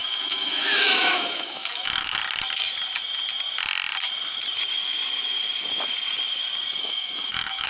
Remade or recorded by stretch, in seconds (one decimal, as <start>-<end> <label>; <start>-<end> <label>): 0.0-2.2 remade; 2.2-6.8 recorded; 6.8-7.7 remade